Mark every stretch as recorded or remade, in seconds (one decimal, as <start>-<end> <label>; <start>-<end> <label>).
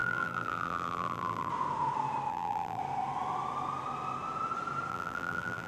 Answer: 0.0-1.5 remade; 1.5-2.3 recorded; 2.3-2.8 remade; 2.8-4.9 recorded; 4.9-5.7 remade